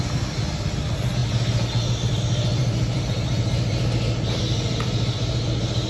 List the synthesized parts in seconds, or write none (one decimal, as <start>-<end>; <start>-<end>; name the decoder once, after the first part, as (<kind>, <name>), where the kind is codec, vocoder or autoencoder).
2.6-4.4 (vocoder, BigVGAN v2)